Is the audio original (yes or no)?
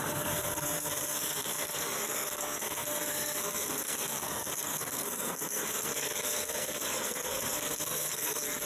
no